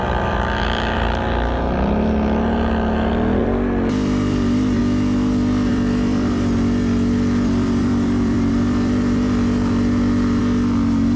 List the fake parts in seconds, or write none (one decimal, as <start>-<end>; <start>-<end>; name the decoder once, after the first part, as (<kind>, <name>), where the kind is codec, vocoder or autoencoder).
3.4-4.8 (vocoder, BigVGAN v2); 5.7-10.4